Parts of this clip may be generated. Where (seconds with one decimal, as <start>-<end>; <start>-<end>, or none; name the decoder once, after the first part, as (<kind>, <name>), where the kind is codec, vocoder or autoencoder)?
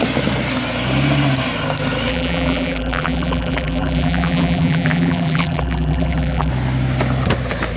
2.1-6.5 (vocoder, BigVGAN v2)